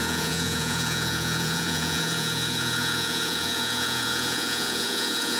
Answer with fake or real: fake